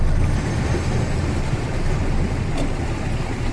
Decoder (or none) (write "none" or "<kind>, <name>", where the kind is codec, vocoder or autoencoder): none